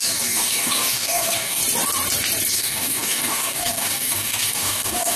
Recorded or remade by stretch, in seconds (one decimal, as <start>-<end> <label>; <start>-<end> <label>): 0.0-1.6 remade; 1.6-2.5 recorded; 2.5-5.2 remade